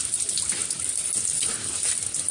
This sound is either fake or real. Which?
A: real